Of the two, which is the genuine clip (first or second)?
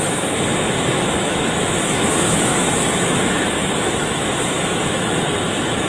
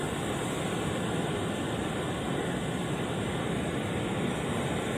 second